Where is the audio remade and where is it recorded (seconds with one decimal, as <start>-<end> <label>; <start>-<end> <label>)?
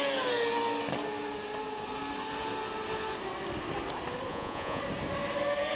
0.0-4.3 recorded; 4.3-4.8 remade; 4.8-5.8 recorded